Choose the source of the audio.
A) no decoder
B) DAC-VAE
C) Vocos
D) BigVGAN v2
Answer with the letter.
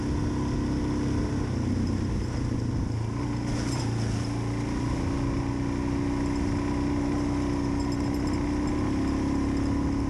A